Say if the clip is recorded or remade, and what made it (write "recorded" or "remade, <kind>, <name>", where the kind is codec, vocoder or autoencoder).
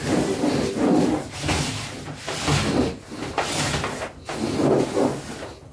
recorded